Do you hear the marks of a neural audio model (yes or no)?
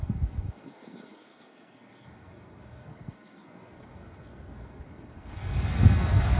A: yes